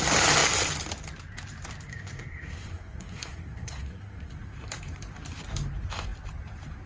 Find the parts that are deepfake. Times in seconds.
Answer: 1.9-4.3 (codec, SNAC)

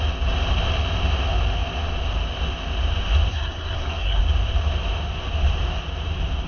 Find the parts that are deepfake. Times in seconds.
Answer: 3.3-4.2 (codec, SNAC)

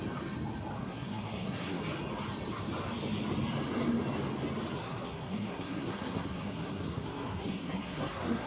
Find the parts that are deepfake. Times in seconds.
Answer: 0.8-1.8 (codec, SNAC); 4.7-8.5

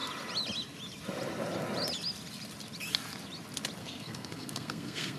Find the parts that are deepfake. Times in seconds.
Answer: 3.8-5.2 (codec, SNAC)